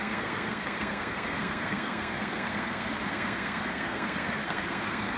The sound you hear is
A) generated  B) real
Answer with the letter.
A